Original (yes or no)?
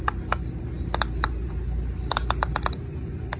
yes